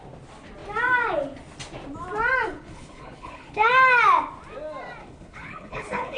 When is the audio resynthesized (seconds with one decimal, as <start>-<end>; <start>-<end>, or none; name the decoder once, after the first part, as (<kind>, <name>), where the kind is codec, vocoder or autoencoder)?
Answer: 2.5-3.7 (codec, HILCodec); 5.0-6.2